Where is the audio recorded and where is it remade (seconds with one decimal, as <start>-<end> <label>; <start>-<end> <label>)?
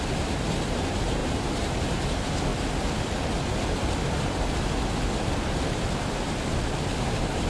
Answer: 0.0-2.5 remade; 2.5-7.0 recorded; 7.0-7.5 remade